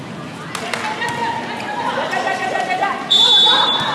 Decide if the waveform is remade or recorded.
recorded